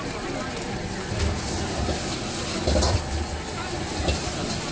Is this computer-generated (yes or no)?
no